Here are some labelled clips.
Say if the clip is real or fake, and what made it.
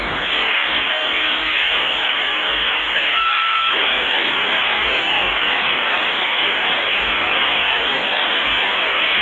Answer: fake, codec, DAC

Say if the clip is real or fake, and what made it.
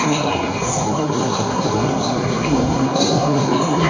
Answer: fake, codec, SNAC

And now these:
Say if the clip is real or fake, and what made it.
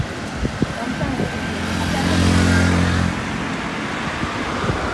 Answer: real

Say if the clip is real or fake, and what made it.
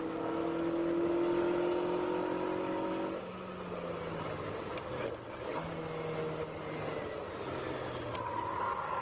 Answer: real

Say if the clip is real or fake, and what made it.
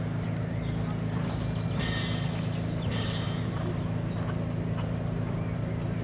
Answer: real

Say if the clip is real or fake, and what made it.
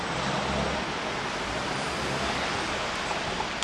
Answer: real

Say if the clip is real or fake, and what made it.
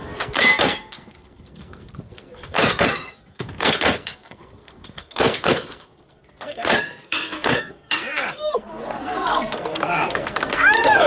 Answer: fake, codec, SNAC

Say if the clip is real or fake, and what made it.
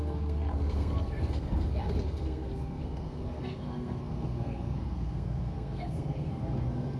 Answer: fake, codec, SNAC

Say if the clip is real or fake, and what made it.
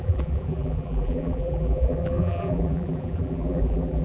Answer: fake, vocoder, BigVGAN v2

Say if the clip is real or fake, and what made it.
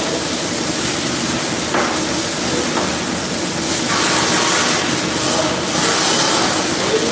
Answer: real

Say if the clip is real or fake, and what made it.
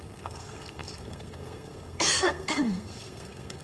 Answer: fake, codec, SNAC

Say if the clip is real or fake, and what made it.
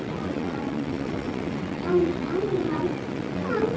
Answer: fake, vocoder, WaveNeXt